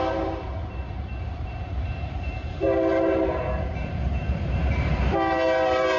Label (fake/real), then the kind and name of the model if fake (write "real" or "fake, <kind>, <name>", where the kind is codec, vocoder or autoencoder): fake, vocoder, BigVGAN v2